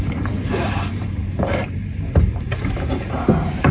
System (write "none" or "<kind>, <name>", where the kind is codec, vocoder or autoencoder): vocoder, BigVGAN v2